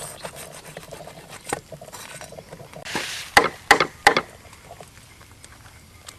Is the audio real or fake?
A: real